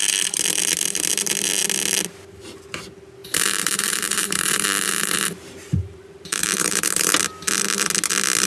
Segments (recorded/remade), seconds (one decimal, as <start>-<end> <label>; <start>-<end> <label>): 0.0-3.2 recorded; 3.2-7.1 remade; 7.1-8.5 recorded